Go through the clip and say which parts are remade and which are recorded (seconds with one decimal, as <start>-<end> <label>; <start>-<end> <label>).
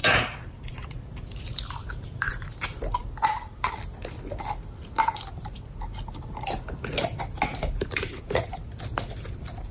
0.0-2.3 remade; 2.3-7.5 recorded; 7.5-8.6 remade; 8.6-9.7 recorded